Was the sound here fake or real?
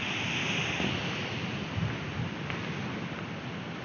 real